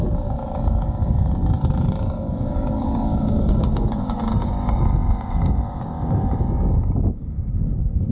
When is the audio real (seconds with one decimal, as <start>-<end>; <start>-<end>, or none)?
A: none